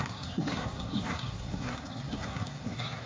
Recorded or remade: remade